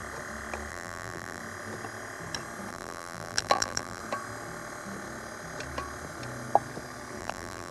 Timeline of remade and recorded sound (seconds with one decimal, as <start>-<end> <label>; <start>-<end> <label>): 0.0-0.7 recorded; 0.7-1.4 remade; 1.4-2.7 recorded; 2.7-4.0 remade; 4.0-7.2 recorded; 7.2-7.7 remade